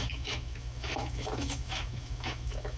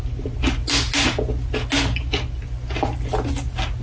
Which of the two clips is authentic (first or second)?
second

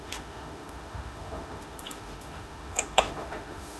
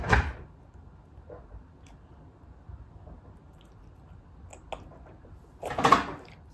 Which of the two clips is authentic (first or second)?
second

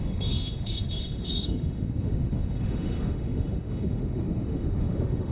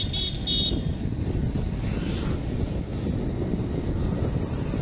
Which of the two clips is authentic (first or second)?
second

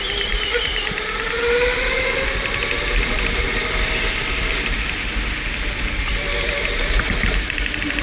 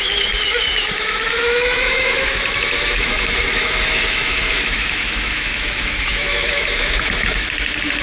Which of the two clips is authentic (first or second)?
first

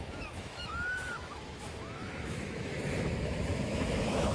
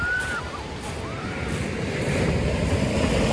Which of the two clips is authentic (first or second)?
second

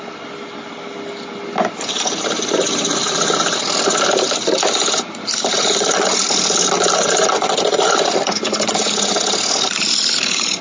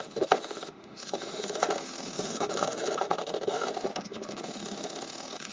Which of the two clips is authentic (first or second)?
first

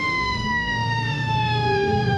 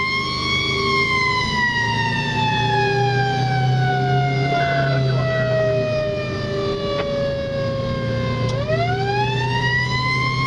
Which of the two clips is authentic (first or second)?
second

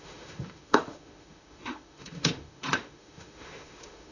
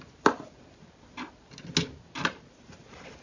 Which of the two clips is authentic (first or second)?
second